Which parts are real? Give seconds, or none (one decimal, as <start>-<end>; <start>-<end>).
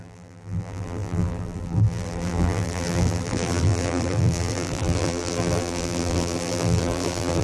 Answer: none